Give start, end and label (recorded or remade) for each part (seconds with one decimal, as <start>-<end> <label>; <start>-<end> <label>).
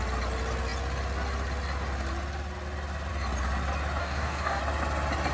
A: 0.0-4.0 recorded; 4.0-4.6 remade; 4.6-5.3 recorded